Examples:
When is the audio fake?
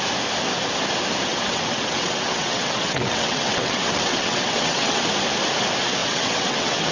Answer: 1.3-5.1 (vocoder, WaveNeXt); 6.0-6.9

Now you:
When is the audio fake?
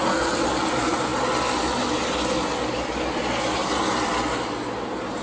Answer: none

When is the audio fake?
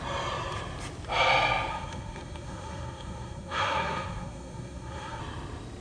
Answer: 1.7-5.2 (codec, SNAC)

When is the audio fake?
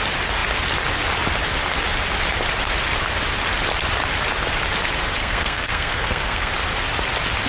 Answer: 5.2-6.5 (codec, SNAC)